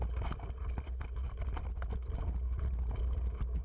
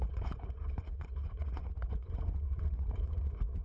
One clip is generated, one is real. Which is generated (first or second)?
second